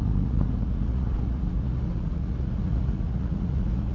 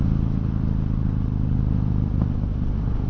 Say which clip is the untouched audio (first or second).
second